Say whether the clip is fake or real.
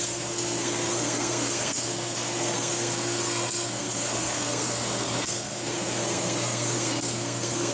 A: fake